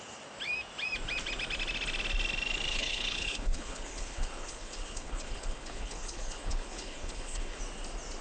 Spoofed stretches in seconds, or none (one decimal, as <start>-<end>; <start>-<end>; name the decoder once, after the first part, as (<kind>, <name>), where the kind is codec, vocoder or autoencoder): 2.7-7.6 (codec, HILCodec)